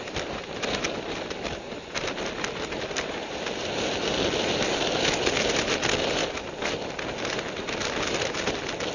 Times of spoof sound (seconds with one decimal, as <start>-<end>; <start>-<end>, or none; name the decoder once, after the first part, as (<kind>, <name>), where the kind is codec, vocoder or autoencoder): none